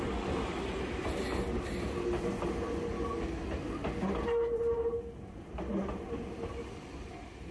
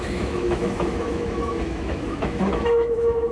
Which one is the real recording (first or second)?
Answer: first